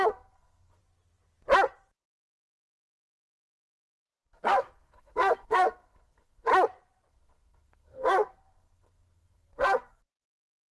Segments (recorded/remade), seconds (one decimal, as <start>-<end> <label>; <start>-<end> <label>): 0.0-0.8 remade; 0.8-2.4 recorded; 2.4-6.5 remade; 6.5-7.1 recorded; 7.1-10.7 remade